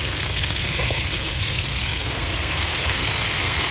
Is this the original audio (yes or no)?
no